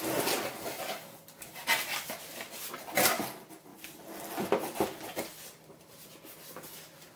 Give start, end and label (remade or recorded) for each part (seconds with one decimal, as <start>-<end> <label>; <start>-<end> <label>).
0.0-7.2 recorded